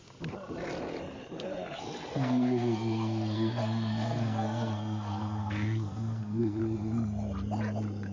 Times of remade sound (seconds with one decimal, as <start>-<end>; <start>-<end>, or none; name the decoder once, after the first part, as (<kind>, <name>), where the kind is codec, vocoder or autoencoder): 2.1-6.6 (codec, SNAC)